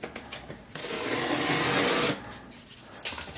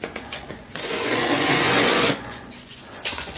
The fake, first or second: second